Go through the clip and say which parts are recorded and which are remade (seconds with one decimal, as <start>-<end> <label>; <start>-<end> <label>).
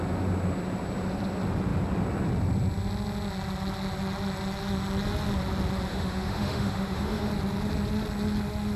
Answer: 0.0-5.9 recorded; 5.9-7.3 remade; 7.3-8.8 recorded